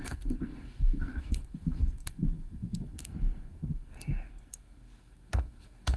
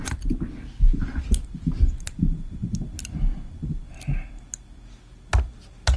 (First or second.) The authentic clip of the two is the second